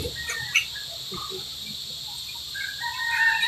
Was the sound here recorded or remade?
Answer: recorded